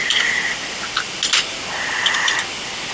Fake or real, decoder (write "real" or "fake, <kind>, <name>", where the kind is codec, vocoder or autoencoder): fake, vocoder, BigVGAN v2